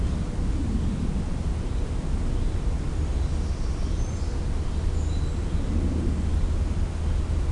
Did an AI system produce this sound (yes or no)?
no